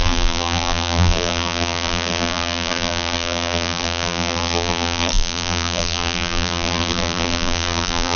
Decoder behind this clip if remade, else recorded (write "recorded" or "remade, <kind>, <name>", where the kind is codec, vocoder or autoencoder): remade, vocoder, BigVGAN v2